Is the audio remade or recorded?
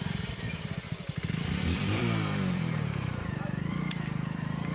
remade